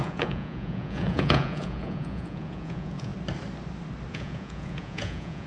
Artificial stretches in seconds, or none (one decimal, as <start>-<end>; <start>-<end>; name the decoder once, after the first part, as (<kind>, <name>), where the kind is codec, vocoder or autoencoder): 0.0-3.1 (vocoder, Vocos); 4.1-5.5